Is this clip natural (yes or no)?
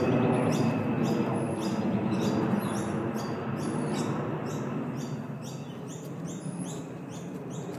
yes